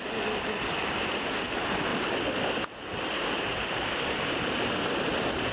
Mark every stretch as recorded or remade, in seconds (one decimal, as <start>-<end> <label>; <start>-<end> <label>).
0.0-5.5 recorded